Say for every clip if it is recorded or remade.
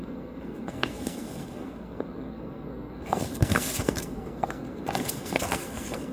remade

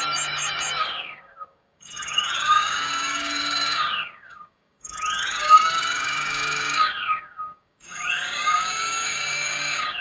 remade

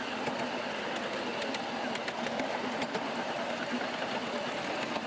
recorded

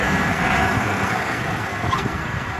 remade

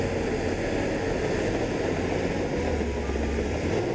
recorded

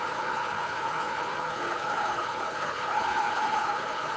remade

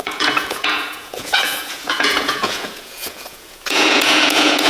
remade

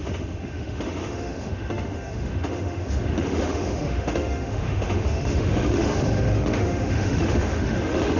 remade